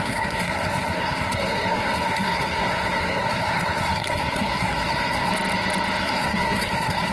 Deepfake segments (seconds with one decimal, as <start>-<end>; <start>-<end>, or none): 0.0-5.3; 6.0-7.1